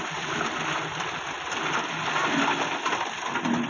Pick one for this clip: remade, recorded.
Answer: recorded